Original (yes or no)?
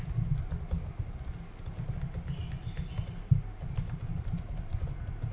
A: yes